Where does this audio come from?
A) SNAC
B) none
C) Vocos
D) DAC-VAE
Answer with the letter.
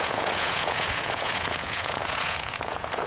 C